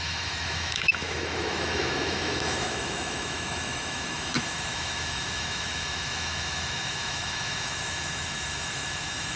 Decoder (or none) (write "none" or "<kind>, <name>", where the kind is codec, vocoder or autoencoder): autoencoder, DAC-VAE